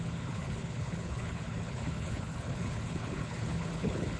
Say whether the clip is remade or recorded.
remade